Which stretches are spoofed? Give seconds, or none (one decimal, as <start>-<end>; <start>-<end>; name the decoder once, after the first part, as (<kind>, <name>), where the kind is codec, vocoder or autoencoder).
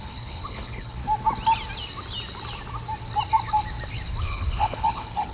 0.0-1.0 (codec, HILCodec); 4.2-5.3